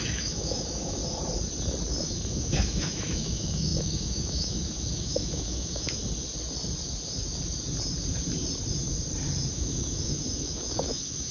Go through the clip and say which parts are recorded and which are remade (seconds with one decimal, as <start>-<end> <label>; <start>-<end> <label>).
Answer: 0.0-1.0 remade; 1.0-2.0 recorded; 2.0-6.0 remade; 6.0-9.5 recorded; 9.5-11.3 remade